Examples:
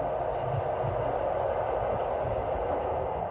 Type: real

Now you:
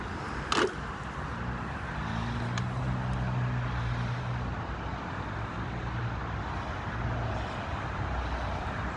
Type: real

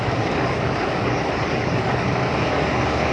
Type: fake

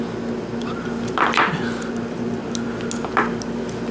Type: real